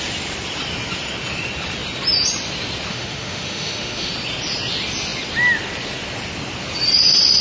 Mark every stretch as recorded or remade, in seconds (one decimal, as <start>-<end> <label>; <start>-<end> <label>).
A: 0.0-2.9 recorded; 2.9-4.1 remade; 4.1-7.4 recorded